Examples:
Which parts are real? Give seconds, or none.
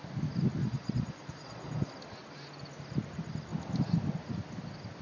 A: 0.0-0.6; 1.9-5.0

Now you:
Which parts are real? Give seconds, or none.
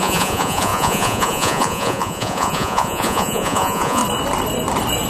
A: 4.0-5.1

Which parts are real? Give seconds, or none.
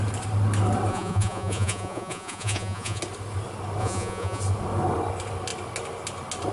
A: 0.0-0.9; 3.0-3.8; 4.4-6.5